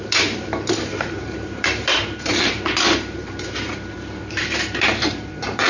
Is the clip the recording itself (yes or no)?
no